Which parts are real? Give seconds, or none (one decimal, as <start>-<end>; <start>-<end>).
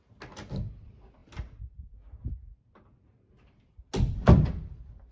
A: 0.0-5.1